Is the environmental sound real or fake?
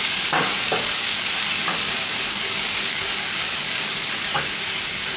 fake